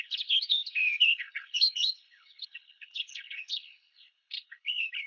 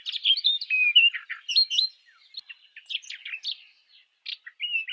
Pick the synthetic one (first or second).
first